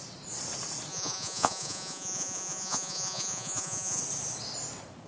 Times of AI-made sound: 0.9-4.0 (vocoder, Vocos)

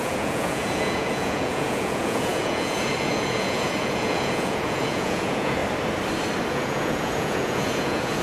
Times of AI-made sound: 0.0-5.6 (vocoder, Vocos); 6.5-8.2

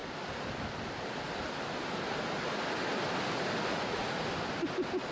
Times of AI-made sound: 3.7-4.2 (vocoder, Vocos)

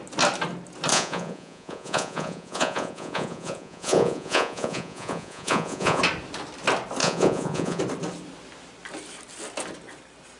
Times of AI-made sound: 0.9-6.0 (vocoder, Vocos); 7.0-7.8